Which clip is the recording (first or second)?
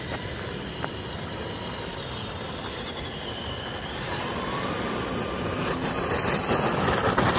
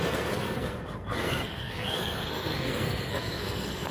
first